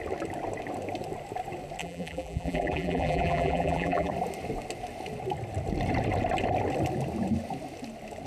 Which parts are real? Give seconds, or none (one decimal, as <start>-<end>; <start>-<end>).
0.0-1.8; 4.1-8.3